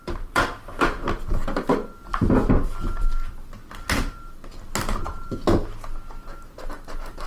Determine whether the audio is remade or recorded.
recorded